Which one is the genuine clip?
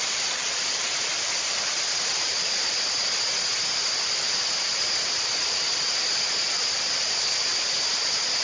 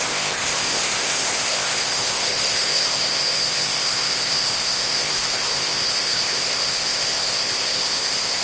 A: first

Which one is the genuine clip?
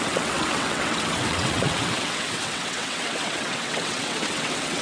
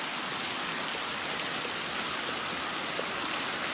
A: second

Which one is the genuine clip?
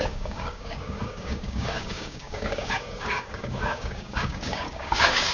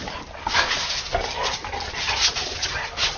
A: second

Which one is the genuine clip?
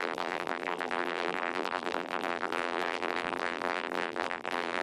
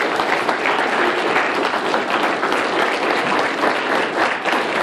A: second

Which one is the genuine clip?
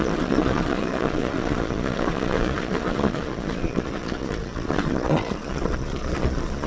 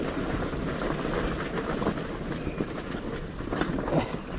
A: second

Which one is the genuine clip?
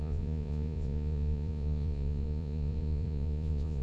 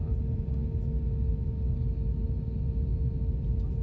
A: second